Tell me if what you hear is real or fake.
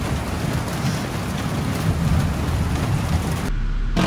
real